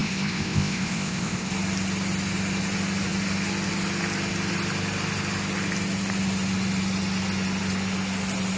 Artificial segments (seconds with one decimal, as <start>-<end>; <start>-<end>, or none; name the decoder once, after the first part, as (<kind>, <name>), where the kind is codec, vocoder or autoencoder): 0.0-1.5 (codec, ZipCodec)